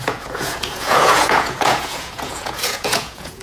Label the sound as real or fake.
fake